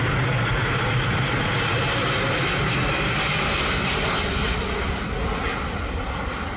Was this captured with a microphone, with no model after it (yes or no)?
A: yes